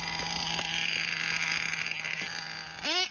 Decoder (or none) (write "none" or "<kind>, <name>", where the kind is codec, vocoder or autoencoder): none